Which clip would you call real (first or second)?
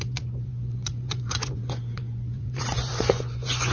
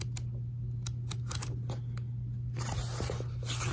second